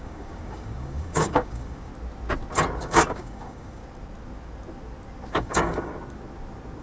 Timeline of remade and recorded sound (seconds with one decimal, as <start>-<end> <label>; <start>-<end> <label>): 0.0-1.9 remade; 1.9-2.8 recorded; 2.8-3.8 remade; 3.8-5.3 recorded; 5.3-5.9 remade; 5.9-6.8 recorded